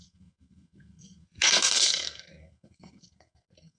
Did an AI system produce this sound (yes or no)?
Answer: yes